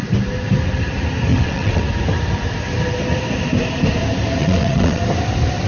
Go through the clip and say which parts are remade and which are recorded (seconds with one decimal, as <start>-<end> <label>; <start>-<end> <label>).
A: 0.0-1.3 recorded; 1.3-1.8 remade; 1.8-4.4 recorded; 4.4-5.0 remade; 5.0-5.7 recorded